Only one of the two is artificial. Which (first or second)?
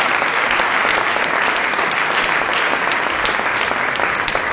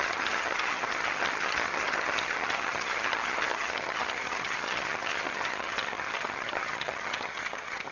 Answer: second